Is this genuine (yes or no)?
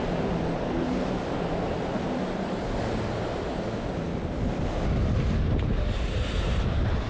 yes